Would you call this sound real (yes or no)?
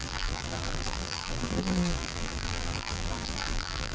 no